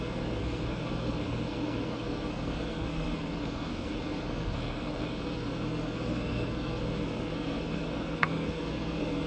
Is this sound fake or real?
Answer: fake